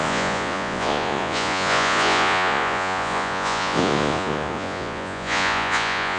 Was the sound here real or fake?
fake